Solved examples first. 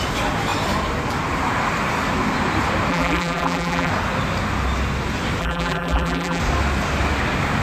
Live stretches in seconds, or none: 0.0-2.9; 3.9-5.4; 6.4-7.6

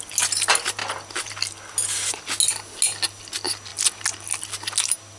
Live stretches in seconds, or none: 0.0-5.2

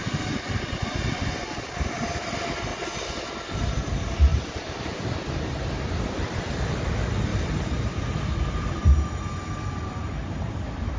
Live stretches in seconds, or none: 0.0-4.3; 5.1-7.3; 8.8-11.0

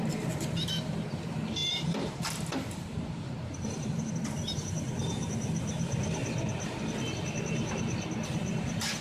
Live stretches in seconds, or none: 0.0-1.6; 4.1-9.0

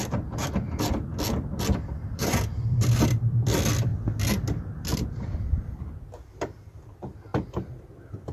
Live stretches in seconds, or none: 1.1-1.8; 3.9-5.1; 7.3-8.3

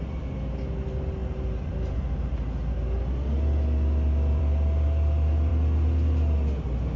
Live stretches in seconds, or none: 0.0-7.0

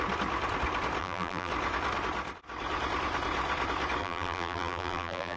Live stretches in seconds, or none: 0.0-1.0; 1.5-4.0